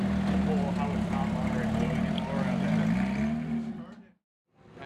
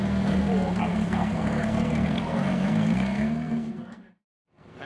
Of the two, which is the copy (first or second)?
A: second